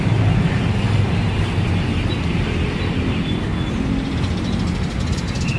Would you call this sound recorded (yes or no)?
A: yes